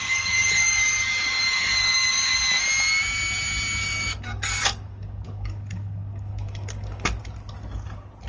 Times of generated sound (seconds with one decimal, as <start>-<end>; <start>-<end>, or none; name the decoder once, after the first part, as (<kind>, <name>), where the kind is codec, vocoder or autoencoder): 0.0-2.4 (codec, DAC); 3.8-7.2